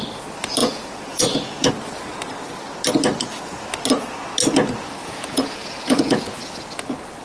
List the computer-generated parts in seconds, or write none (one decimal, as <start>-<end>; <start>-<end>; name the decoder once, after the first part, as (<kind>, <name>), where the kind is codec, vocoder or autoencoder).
0.6-1.7 (vocoder, Vocos); 5.0-6.3